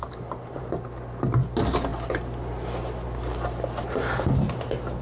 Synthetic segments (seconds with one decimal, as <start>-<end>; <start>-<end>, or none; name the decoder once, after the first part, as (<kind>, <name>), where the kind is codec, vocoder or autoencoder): none